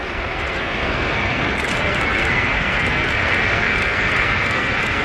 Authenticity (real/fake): fake